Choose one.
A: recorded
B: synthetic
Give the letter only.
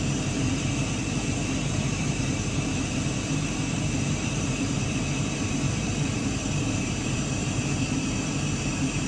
B